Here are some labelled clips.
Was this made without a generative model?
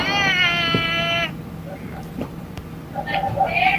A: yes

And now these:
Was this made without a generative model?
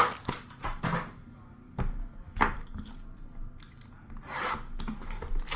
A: yes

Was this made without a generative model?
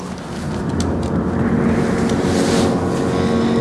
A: yes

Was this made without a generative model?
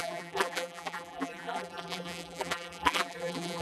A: no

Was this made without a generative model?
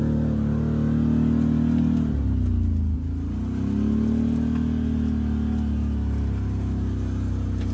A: yes